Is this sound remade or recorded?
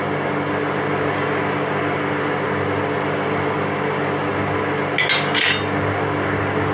recorded